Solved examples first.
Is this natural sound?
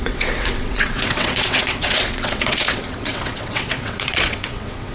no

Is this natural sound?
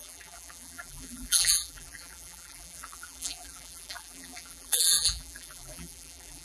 no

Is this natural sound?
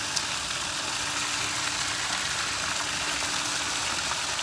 yes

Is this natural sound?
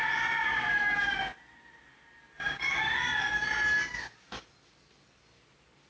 yes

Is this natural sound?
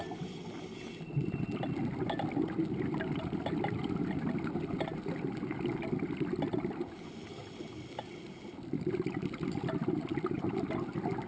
yes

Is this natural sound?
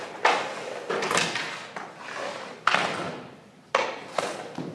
yes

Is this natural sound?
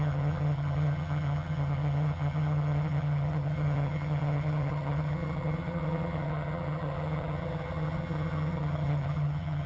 no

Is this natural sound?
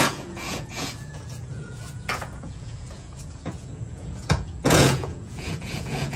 no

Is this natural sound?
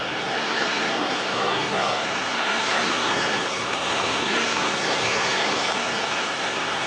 no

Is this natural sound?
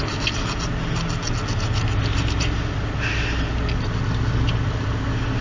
yes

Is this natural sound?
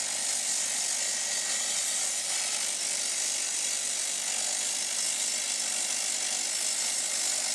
yes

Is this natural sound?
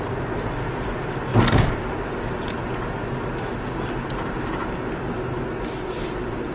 yes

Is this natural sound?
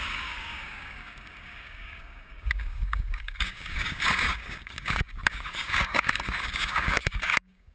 no